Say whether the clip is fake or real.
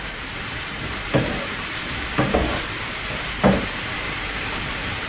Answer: fake